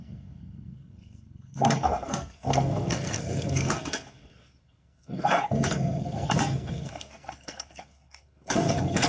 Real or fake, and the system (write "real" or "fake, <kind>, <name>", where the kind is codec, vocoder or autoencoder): fake, codec, SNAC